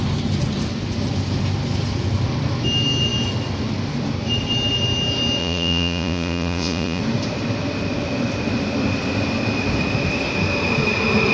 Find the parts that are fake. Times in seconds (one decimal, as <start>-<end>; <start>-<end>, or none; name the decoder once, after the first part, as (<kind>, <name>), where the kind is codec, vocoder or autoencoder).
5.4-7.0 (vocoder, Vocos)